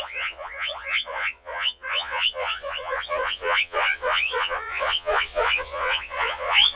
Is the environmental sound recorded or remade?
remade